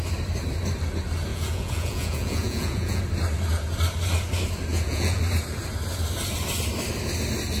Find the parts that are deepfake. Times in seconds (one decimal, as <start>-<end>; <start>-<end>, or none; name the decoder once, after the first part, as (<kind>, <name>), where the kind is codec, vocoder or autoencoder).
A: 1.3-3.0 (vocoder, Vocos); 4.7-5.2